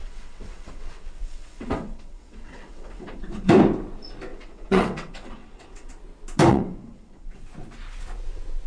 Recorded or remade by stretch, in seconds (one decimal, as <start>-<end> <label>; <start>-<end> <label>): 0.0-3.5 remade; 3.5-4.3 recorded; 4.3-5.9 remade; 5.9-6.5 recorded; 6.5-7.4 remade; 7.4-8.7 recorded